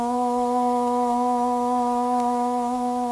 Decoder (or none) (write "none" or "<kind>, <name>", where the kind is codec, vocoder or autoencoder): autoencoder, DAC-VAE